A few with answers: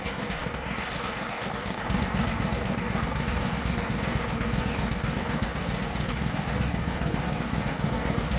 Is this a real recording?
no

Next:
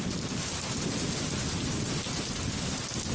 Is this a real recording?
yes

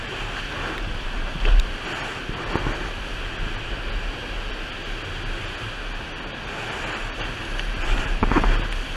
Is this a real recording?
yes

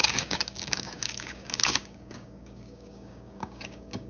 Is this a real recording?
no